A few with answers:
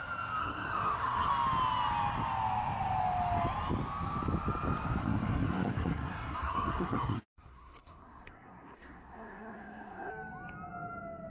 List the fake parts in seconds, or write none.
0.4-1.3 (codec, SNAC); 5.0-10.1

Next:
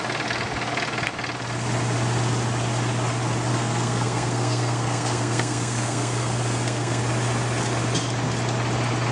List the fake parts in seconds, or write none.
3.5-7.0 (codec, SNAC)

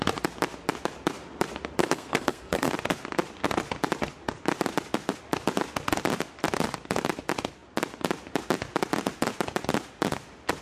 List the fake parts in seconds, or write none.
1.8-2.7 (codec, SNAC)

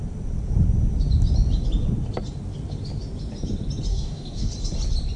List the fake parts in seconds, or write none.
3.9-4.5 (codec, DAC)

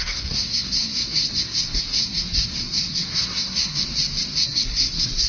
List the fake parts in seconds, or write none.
0.0-3.8 (codec, SNAC); 4.4-5.3

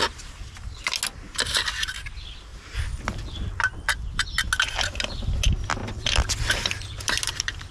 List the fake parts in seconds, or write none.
2.5-3.5 (vocoder, BigVGAN v2); 5.8-7.7